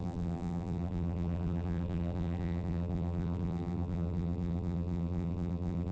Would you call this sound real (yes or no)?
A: no